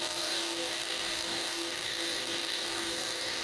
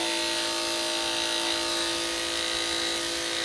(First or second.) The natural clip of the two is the second